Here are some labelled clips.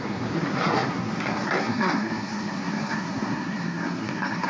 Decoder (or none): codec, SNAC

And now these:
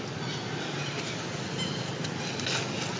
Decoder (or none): none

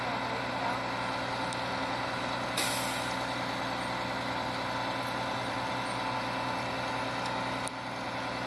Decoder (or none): none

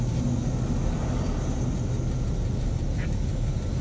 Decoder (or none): none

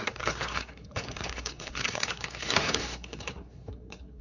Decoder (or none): codec, SNAC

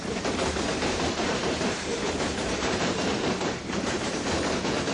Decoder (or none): vocoder, BigVGAN v2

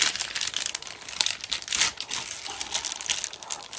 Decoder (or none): none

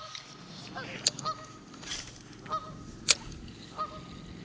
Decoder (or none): none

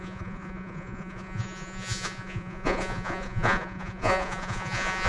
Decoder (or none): vocoder, Vocos